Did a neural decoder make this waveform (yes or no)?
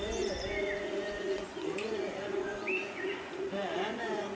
yes